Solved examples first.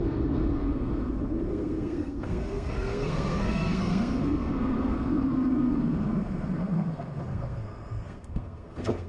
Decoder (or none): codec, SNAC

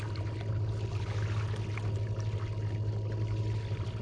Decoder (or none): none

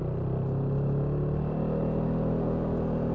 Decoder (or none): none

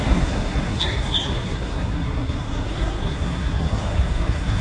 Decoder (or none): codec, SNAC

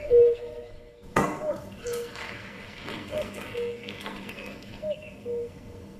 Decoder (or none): codec, SNAC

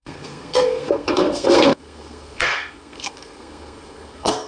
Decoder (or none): codec, SNAC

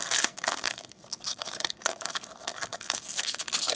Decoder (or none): codec, SNAC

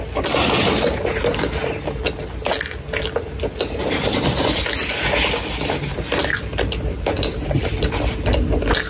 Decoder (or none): none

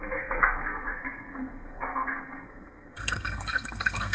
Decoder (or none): codec, SNAC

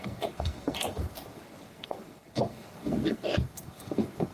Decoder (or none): codec, SNAC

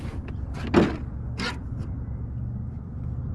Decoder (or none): none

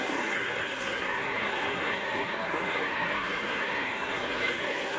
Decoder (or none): codec, SNAC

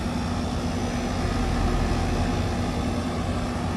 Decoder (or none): none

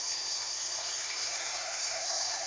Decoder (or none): codec, SNAC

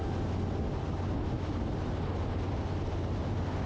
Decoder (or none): none